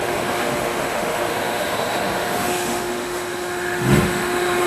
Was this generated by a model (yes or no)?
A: yes